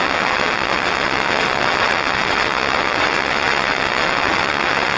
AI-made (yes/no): yes